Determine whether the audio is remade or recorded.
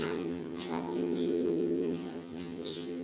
remade